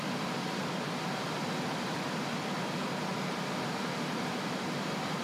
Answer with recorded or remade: remade